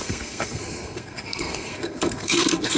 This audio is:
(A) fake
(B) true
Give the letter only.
A